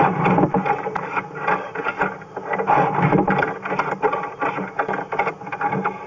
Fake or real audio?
real